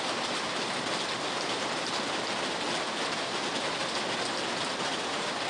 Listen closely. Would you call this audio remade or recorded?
recorded